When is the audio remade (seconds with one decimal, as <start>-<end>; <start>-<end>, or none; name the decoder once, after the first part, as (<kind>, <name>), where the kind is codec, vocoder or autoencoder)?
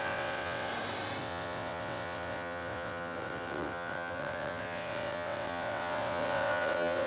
0.0-0.7 (vocoder, WaveNeXt); 1.2-7.1